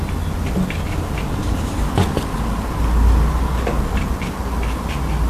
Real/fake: real